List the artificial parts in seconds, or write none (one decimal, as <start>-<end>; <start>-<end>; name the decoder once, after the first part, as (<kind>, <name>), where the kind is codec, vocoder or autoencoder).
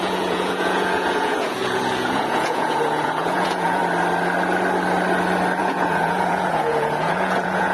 0.0-3.8 (vocoder, Vocos); 5.6-7.7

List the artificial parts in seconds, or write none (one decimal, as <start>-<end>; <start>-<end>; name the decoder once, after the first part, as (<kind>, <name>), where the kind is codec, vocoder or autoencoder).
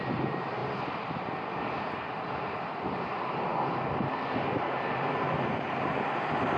0.0-3.5 (vocoder, BigVGAN v2); 4.3-6.6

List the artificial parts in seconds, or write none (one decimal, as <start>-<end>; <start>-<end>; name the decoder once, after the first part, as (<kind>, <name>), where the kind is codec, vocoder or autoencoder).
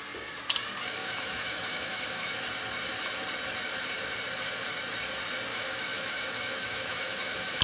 1.0-2.3 (autoencoder, DAC-VAE); 5.5-7.6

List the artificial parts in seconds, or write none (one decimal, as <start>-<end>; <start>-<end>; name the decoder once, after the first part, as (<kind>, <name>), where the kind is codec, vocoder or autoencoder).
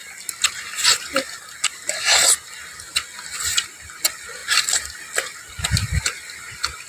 none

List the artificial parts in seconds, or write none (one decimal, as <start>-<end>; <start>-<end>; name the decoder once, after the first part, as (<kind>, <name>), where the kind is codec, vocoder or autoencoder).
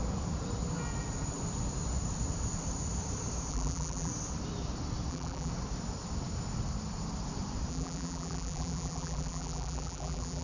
3.5-4.1 (vocoder, BigVGAN v2); 5.1-5.5; 7.7-10.4